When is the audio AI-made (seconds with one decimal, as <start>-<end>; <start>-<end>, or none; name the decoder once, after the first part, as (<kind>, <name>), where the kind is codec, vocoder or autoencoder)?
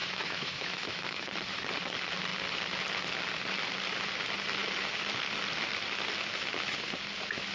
0.0-1.3 (autoencoder, DAC-VAE)